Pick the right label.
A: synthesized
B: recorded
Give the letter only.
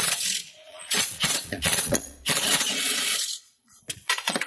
A